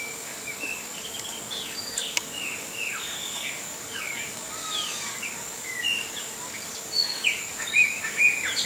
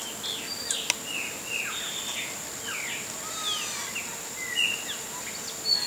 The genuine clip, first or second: second